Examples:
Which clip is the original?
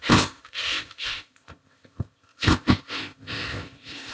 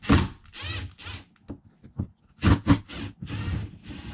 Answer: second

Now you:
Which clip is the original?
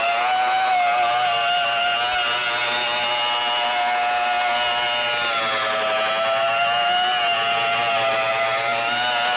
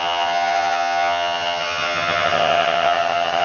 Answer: first